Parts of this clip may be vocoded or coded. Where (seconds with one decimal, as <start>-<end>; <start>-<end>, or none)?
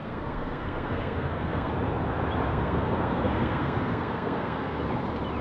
0.0-1.7; 2.5-4.8